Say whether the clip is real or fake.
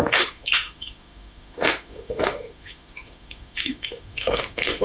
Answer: fake